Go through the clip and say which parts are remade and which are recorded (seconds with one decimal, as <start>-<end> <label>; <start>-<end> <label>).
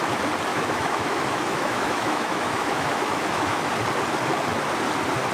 0.0-0.5 recorded; 0.5-3.7 remade; 3.7-5.3 recorded